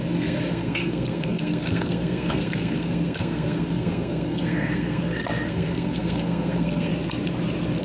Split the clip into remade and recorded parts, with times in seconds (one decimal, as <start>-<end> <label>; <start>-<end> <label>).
0.0-6.9 remade; 6.9-7.8 recorded